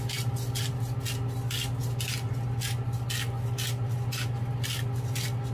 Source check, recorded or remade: recorded